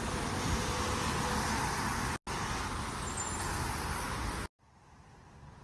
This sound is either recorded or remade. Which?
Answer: recorded